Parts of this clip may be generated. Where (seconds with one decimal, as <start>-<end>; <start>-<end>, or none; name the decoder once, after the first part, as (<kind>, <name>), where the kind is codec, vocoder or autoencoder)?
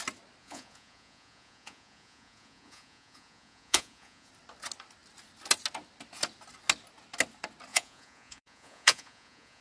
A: 0.4-4.3 (vocoder, Vocos); 7.7-9.6